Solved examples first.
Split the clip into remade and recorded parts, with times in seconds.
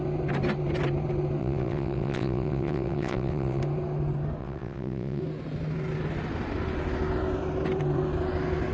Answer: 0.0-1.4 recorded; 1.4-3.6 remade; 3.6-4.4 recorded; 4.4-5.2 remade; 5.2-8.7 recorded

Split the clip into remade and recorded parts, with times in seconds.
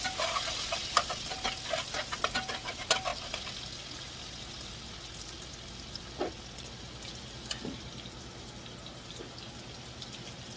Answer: 0.0-10.6 recorded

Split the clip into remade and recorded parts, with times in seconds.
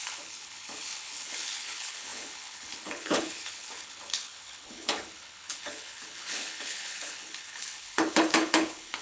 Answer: 0.0-9.0 remade